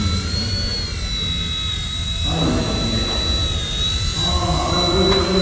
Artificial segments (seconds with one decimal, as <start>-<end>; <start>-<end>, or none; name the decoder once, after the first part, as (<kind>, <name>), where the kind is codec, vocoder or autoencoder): none